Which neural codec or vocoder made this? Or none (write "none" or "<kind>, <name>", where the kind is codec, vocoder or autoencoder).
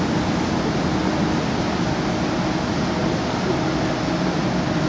none